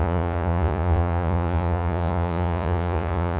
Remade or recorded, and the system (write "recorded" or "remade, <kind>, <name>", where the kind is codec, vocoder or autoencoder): remade, vocoder, Vocos